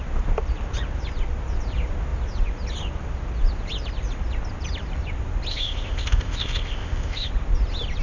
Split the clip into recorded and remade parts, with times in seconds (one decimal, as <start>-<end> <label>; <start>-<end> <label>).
0.0-5.5 recorded; 5.5-7.3 remade; 7.3-8.0 recorded